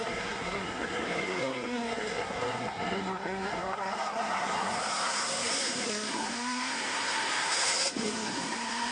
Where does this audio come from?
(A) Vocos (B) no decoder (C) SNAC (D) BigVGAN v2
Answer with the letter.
C